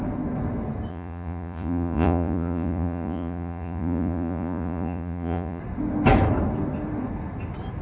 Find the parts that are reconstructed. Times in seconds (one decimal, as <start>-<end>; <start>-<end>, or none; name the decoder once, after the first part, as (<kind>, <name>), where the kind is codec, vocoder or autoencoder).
0.9-5.6 (vocoder, Vocos)